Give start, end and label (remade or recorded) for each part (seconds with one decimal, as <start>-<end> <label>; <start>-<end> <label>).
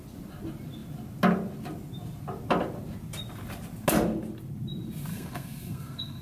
0.0-5.1 recorded; 5.1-6.2 remade